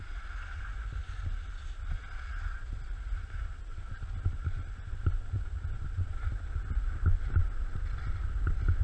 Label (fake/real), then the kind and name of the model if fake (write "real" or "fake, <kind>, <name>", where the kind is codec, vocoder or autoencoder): real